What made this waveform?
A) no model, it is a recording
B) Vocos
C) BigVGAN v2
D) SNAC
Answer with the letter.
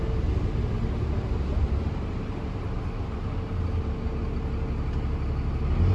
A